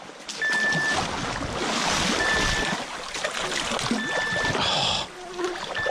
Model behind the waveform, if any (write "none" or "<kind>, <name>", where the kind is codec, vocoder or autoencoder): none